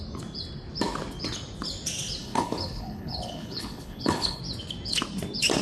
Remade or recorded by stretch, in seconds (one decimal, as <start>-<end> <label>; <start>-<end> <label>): 0.0-2.2 recorded; 2.2-4.4 remade; 4.4-5.6 recorded

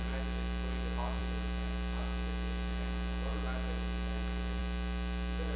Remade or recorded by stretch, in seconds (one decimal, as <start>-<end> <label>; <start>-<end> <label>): 0.0-5.6 recorded

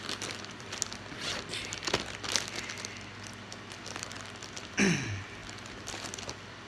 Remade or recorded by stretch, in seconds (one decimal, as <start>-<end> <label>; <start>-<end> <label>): 0.0-6.7 recorded

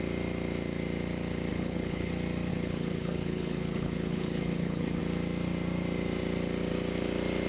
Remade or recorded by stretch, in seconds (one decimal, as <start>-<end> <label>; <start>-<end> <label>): 0.0-1.5 recorded; 1.5-2.1 remade; 2.1-2.5 recorded; 2.5-5.0 remade; 5.0-7.5 recorded

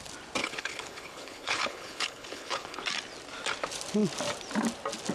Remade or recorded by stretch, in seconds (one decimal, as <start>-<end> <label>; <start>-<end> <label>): 0.0-0.4 recorded; 0.4-2.8 remade; 2.8-5.1 recorded

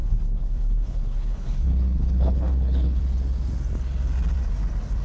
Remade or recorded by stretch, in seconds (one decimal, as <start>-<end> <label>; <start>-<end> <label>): 0.0-3.0 remade; 3.0-5.0 recorded

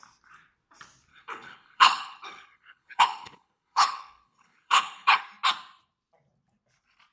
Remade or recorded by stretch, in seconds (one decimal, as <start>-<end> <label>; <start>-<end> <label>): 0.0-1.1 recorded; 1.1-5.2 remade; 5.2-7.1 recorded

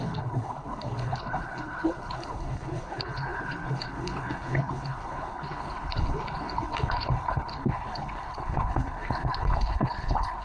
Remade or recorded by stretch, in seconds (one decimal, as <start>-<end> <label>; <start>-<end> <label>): 0.0-10.4 remade